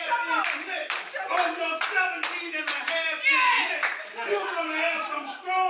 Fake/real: real